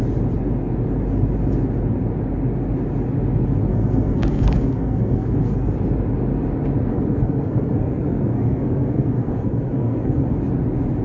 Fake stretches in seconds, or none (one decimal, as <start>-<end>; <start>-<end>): 3.7-5.7; 6.9-10.4